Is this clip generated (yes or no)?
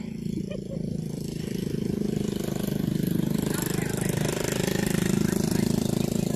yes